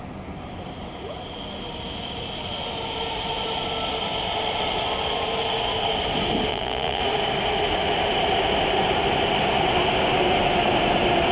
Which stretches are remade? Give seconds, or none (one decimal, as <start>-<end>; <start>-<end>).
6.5-7.0